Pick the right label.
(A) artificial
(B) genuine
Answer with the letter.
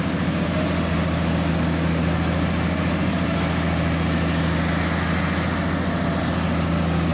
B